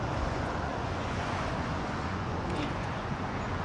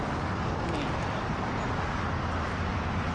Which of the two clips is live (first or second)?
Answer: second